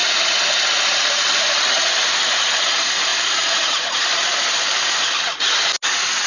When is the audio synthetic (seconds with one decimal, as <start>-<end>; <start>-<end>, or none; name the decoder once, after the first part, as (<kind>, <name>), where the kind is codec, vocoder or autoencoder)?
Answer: 0.0-1.4 (vocoder, BigVGAN v2); 3.1-5.0